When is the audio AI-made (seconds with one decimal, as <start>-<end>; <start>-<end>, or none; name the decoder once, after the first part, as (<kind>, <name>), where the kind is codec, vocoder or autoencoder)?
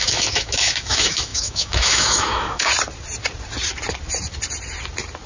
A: 0.0-2.7 (autoencoder, DAC-VAE)